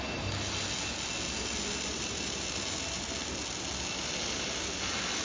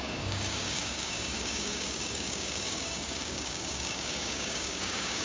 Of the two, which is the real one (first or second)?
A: first